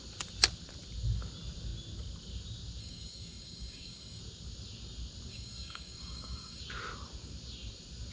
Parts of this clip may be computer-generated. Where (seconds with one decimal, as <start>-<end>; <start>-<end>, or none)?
2.8-4.2; 5.3-6.6